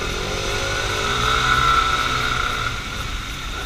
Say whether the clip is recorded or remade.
remade